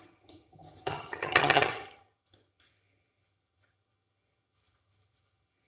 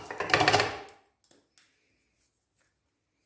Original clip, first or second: second